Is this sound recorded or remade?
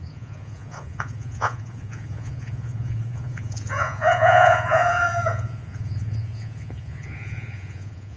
remade